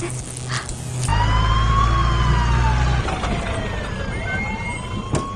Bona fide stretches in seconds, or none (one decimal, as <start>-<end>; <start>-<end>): 0.0-5.4